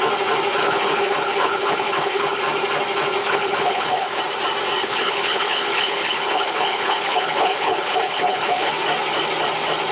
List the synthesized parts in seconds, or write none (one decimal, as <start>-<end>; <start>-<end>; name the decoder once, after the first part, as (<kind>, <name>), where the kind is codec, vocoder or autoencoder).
0.6-2.4 (codec, HILCodec); 3.2-4.2; 4.8-8.7